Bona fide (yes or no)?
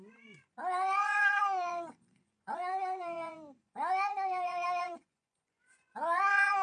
no